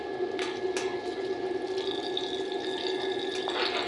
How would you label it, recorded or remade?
recorded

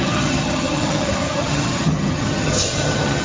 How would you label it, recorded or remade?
remade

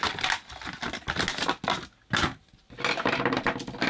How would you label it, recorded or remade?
recorded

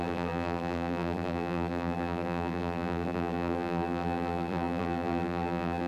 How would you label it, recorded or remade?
remade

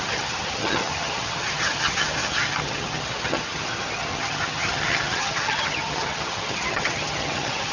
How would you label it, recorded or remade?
remade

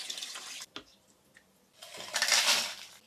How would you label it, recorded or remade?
recorded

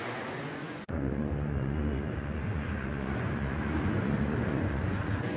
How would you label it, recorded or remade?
remade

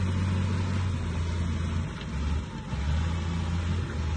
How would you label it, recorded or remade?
recorded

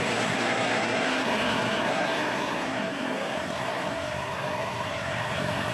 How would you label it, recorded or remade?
remade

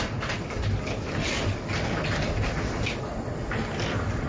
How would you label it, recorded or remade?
recorded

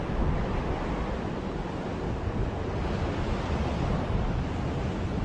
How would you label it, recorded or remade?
recorded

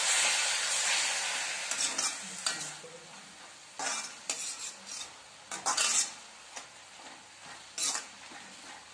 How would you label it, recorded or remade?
recorded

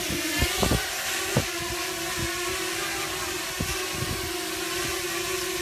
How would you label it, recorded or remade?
recorded